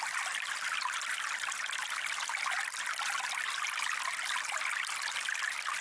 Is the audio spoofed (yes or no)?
no